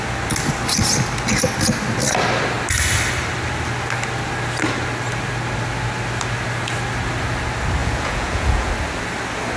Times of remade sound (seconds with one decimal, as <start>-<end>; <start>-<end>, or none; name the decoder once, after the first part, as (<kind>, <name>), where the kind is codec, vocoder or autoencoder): 7.8-8.7 (vocoder, Vocos)